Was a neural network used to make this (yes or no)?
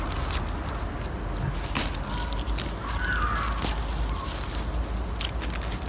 no